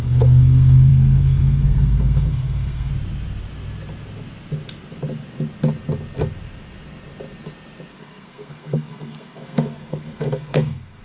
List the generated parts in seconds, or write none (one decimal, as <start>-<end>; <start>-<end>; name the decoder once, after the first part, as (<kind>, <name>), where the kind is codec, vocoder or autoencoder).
0.0-2.9 (codec, SNAC); 7.9-11.0